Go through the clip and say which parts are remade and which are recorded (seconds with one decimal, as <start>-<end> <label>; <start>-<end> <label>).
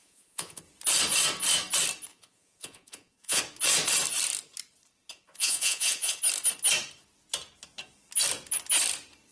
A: 0.0-0.6 remade; 0.6-2.1 recorded; 2.1-3.4 remade; 3.4-5.1 recorded; 5.1-6.2 remade; 6.2-9.3 recorded